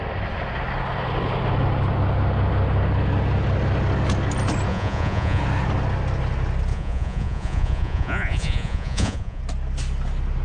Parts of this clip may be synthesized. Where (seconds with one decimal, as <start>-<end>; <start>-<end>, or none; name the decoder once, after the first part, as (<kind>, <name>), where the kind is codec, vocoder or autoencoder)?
4.7-5.4 (vocoder, Vocos); 6.7-9.4